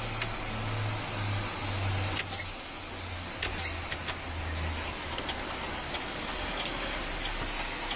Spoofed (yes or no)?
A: no